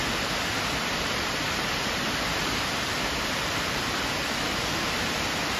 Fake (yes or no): no